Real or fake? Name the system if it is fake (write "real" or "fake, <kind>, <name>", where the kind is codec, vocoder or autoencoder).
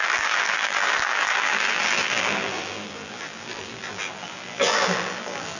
fake, vocoder, BigVGAN v2